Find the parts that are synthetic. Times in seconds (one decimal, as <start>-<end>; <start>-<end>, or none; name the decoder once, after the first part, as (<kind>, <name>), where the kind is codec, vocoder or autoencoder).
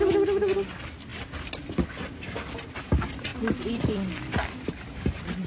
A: 3.3-5.0 (vocoder, BigVGAN v2)